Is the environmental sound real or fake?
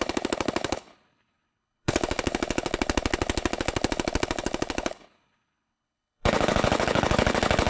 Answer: fake